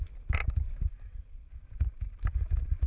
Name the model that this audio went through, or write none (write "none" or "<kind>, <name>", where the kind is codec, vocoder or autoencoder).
none